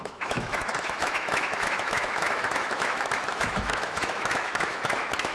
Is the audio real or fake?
fake